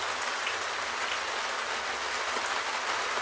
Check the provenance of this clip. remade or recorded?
recorded